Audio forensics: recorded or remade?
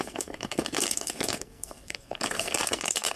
remade